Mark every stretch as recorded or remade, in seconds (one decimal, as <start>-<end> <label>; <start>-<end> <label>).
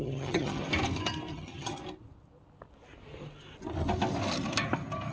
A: 0.0-0.6 remade; 0.6-1.3 recorded; 1.3-1.8 remade; 1.8-5.1 recorded